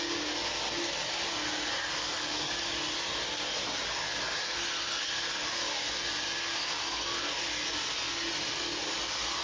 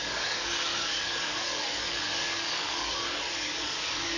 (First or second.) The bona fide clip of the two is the first